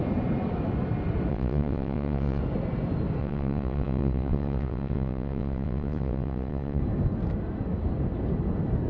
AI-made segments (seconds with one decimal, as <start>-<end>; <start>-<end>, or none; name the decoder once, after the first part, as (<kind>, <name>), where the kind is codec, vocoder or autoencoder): 1.3-2.4 (vocoder, WaveNeXt); 3.2-6.8